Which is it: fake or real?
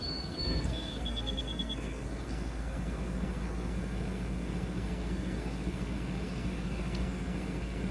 fake